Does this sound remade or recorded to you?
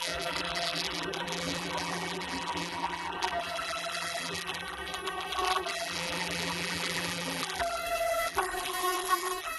remade